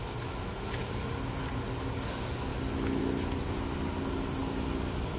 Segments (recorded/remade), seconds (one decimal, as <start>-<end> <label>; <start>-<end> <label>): 0.0-5.2 recorded